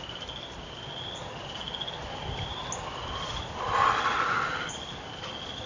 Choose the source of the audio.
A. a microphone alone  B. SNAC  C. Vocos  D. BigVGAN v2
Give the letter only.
A